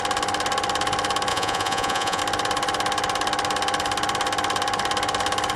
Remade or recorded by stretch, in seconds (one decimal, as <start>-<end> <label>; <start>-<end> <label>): 0.0-1.3 recorded; 1.3-2.2 remade; 2.2-5.6 recorded